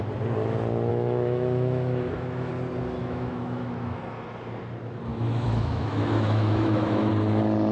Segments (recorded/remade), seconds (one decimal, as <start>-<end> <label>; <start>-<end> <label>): 0.0-0.9 recorded; 0.9-2.5 remade; 2.5-3.0 recorded; 3.0-4.0 remade; 4.0-5.1 recorded; 5.1-7.1 remade; 7.1-7.7 recorded